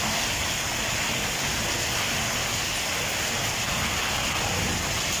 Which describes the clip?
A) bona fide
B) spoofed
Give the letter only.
A